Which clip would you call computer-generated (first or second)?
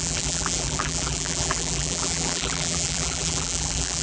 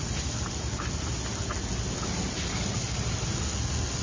first